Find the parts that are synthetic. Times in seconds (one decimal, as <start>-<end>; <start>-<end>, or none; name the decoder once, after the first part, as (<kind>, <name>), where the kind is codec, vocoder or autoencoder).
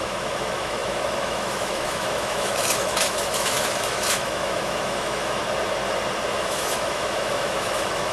0.0-5.4 (autoencoder, DAC-VAE); 6.3-8.1